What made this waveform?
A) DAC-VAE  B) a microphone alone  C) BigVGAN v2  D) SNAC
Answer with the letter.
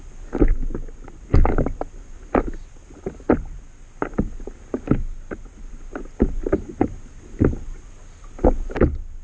B